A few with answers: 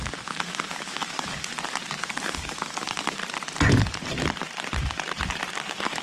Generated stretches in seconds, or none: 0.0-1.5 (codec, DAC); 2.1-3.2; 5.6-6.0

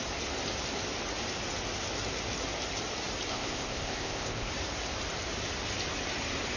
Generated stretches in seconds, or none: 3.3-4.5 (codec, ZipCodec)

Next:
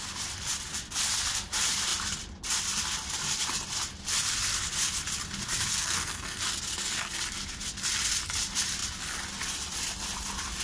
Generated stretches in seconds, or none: 5.7-6.4 (codec, SNAC)

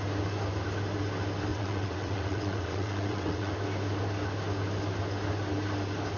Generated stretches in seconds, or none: 1.5-3.5 (vocoder, WaveNeXt)

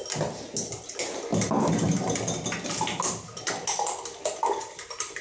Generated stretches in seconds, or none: none

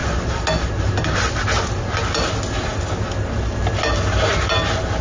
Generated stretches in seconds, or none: none